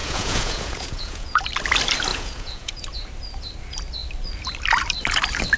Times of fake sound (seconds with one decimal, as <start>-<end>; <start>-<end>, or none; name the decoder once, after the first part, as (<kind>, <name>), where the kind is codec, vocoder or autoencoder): 0.0-1.4 (vocoder, Vocos); 2.1-2.8